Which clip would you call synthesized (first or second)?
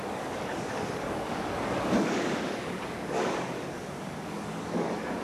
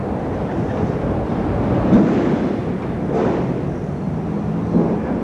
first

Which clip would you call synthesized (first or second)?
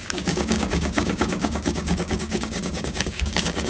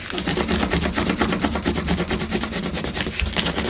first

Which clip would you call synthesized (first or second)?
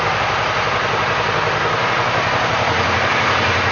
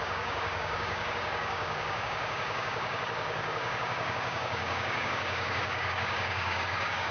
second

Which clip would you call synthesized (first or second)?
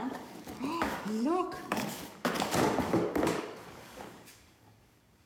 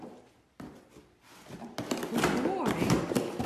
first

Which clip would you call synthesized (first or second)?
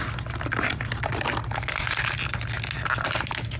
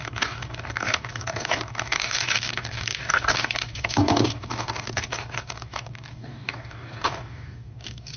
second